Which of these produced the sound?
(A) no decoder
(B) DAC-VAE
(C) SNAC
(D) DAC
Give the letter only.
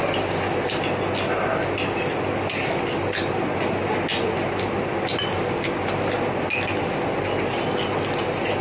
A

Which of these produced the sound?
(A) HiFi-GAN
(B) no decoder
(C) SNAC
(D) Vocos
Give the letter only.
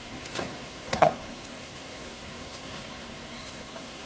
C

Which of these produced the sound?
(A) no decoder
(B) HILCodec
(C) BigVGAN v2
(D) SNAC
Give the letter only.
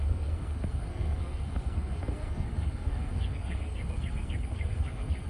D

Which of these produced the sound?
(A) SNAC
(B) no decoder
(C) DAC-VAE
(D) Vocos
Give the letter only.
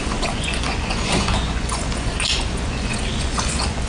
D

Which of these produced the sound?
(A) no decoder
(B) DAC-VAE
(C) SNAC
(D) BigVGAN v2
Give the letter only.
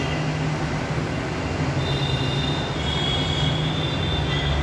A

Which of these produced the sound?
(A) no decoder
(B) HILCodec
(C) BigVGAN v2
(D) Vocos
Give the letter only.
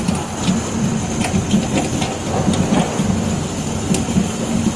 A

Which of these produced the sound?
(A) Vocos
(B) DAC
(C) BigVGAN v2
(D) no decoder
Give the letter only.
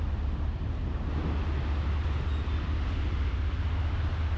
D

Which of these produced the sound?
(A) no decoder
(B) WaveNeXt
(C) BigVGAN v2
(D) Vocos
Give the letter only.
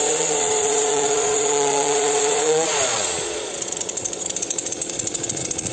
D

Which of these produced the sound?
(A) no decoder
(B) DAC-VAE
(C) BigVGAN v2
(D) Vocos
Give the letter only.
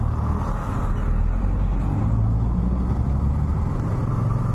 A